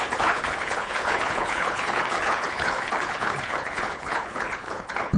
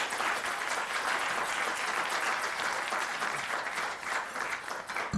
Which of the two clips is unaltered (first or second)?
second